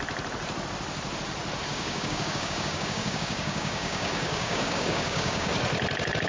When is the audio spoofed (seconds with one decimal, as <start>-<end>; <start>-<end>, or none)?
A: 1.7-5.5